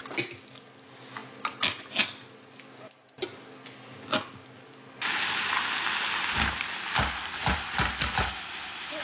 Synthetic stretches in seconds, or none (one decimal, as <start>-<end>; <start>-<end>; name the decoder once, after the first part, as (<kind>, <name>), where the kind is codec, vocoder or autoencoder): none